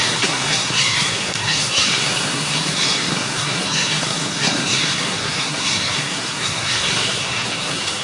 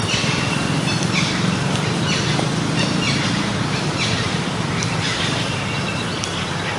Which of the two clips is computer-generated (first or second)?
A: first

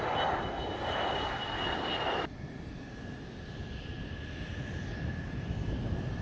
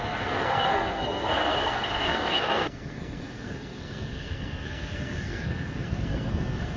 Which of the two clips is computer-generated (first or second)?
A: second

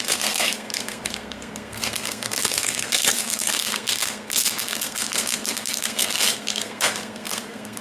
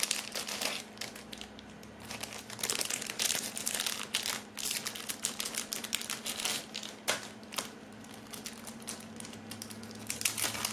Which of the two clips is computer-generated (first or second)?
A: first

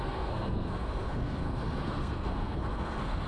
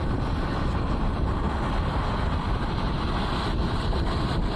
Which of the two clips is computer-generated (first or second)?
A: first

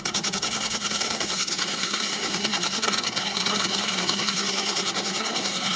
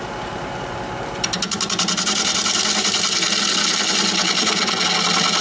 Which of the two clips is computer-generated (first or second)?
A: first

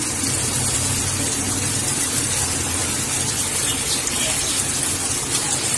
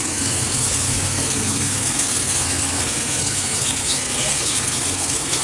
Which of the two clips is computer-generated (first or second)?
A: second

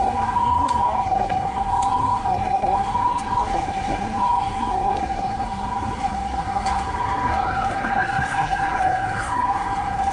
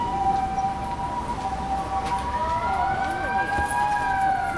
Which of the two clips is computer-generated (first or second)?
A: first